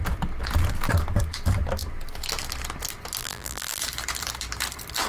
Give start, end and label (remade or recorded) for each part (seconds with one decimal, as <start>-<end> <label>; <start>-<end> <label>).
0.0-3.2 recorded; 3.2-3.8 remade; 3.8-5.1 recorded